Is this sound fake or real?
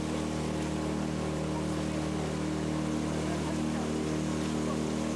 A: real